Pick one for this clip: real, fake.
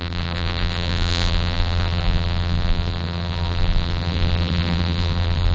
fake